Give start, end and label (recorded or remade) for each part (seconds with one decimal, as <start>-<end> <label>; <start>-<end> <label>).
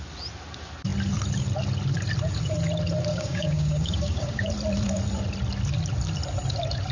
0.0-3.1 recorded; 3.1-4.5 remade; 4.5-6.9 recorded